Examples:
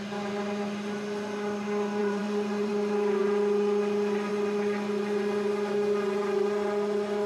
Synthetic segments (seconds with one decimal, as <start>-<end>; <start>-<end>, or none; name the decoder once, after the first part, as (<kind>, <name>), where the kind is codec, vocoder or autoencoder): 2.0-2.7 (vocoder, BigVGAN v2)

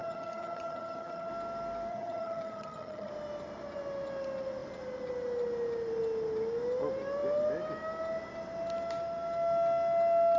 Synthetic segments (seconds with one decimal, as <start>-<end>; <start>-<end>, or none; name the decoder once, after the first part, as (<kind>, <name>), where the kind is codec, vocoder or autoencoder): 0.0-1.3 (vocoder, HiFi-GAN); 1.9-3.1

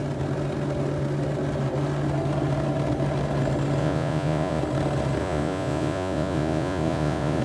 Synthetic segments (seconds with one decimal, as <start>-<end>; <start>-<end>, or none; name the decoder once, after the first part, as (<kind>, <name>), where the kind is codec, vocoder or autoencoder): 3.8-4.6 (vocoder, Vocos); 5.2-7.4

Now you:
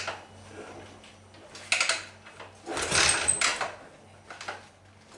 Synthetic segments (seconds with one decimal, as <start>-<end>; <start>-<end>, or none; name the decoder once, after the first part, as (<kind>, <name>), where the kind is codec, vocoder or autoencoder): none

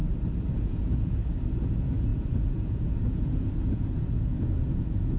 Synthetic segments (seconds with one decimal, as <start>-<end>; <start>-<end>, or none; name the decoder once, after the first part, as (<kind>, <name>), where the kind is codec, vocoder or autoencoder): 0.6-5.2 (vocoder, Vocos)

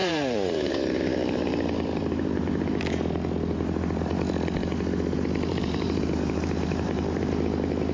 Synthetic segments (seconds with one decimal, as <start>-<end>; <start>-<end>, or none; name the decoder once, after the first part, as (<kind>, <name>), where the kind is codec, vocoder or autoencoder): 0.0-2.8 (vocoder, BigVGAN v2); 5.5-7.3

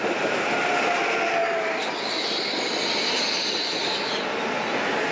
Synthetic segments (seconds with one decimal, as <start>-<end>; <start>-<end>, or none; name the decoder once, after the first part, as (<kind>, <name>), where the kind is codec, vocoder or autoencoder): none

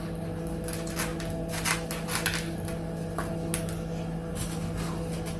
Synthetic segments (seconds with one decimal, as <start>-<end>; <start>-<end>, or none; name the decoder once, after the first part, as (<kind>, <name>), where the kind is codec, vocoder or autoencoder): none